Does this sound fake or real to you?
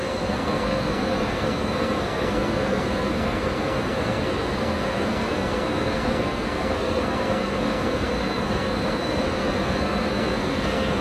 fake